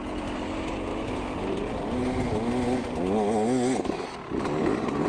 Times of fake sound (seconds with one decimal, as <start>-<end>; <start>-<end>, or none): 0.9-1.8